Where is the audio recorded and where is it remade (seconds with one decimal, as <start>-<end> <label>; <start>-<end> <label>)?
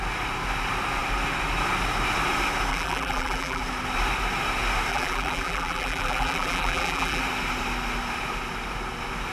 0.0-2.7 recorded; 2.7-3.6 remade; 3.6-4.9 recorded; 4.9-7.2 remade; 7.2-9.3 recorded